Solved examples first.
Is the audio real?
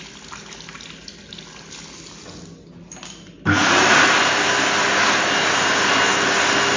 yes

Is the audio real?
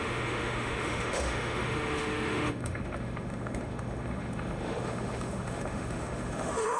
no